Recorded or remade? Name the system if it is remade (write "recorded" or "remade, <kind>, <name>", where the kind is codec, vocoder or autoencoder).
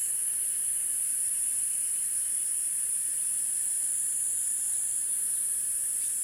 recorded